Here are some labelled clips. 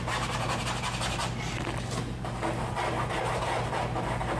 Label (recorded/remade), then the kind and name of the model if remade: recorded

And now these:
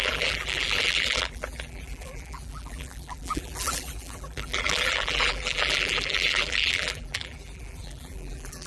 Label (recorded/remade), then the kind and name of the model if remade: remade, vocoder, BigVGAN v2